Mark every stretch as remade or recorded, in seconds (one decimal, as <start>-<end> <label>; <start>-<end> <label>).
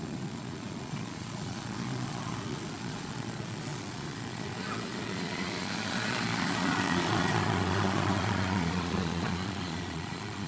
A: 0.0-10.5 remade